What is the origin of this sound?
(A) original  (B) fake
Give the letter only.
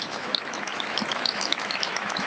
B